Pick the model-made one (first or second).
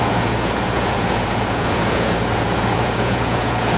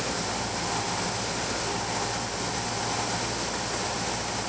first